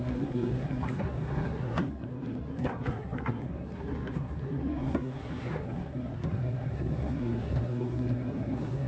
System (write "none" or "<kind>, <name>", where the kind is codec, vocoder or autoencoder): codec, SNAC